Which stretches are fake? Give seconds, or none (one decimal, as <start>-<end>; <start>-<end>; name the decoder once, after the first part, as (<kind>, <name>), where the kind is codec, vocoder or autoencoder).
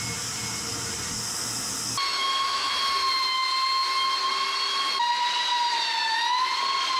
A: 2.1-2.7 (autoencoder, DAC-VAE)